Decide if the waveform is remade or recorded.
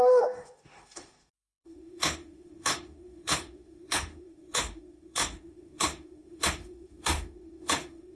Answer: remade